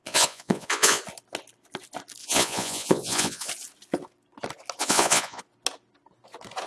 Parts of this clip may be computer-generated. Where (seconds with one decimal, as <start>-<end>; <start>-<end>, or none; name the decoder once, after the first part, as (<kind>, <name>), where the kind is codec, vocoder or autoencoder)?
0.0-1.0 (vocoder, Vocos); 2.2-3.5; 4.8-5.4